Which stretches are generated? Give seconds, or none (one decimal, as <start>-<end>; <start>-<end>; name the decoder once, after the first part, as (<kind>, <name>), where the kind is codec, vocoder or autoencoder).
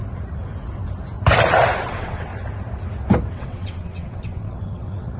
1.8-2.3 (vocoder, WaveNeXt); 3.3-5.2